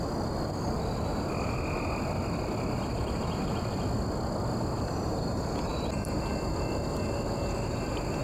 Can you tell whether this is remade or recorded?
recorded